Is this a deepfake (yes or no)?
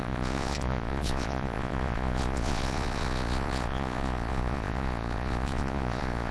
yes